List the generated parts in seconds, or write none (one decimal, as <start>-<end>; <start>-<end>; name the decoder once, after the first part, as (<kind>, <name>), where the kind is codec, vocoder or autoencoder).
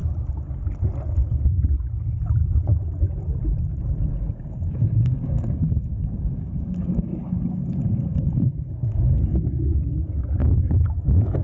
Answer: 4.3-10.4 (codec, DAC); 11.0-11.4